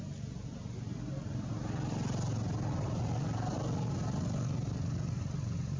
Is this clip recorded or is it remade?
recorded